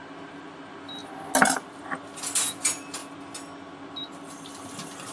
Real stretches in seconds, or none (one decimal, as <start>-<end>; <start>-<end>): 0.0-5.1